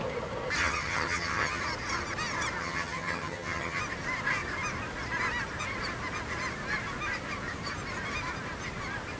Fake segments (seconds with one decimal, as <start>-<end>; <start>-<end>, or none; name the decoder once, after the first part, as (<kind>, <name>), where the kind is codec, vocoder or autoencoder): 0.6-1.6 (vocoder, HiFi-GAN); 2.6-3.8